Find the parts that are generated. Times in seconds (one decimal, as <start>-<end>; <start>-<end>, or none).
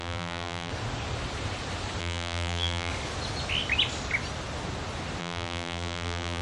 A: 0.0-0.7; 2.0-2.9; 5.2-6.4